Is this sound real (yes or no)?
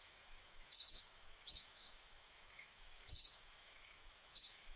no